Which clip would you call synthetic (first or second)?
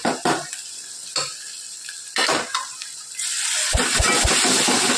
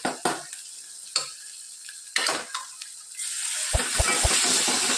first